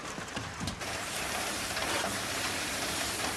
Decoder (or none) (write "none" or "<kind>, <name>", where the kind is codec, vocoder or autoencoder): vocoder, BigVGAN v2